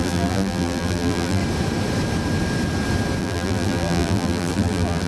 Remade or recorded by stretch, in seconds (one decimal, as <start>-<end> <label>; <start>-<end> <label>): 0.0-1.4 remade; 1.4-3.2 recorded; 3.2-5.1 remade